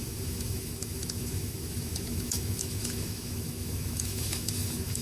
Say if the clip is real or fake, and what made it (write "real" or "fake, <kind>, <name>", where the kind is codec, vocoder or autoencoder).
fake, autoencoder, DAC-VAE